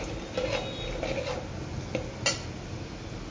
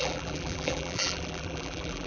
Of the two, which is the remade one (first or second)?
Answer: second